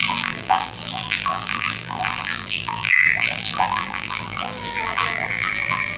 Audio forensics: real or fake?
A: fake